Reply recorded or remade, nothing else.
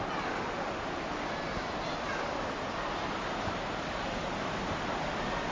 recorded